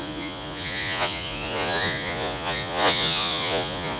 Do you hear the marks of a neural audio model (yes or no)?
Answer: yes